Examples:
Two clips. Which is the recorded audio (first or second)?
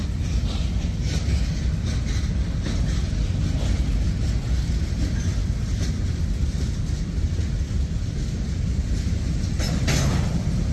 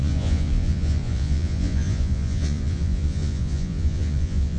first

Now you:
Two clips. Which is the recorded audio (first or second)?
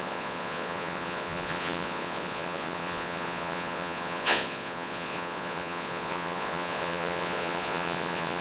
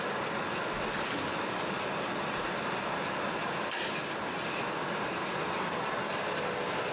second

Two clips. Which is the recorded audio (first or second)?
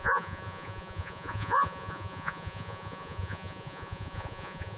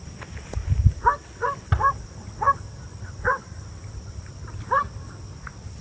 second